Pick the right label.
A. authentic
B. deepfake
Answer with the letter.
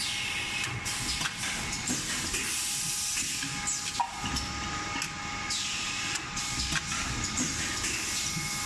A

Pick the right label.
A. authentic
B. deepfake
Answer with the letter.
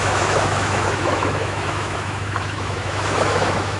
B